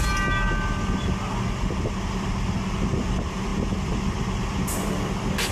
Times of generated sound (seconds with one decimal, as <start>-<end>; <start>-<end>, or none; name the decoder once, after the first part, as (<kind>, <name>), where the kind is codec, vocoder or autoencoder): none